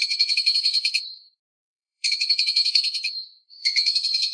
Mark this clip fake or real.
fake